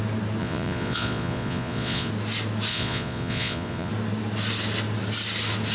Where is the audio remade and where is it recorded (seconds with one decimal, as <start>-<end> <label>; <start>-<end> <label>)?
0.0-0.4 recorded; 0.4-2.1 remade; 2.1-2.7 recorded; 2.7-3.9 remade; 3.9-5.7 recorded